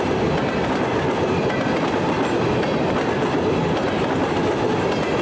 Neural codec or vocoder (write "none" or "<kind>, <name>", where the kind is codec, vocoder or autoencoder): none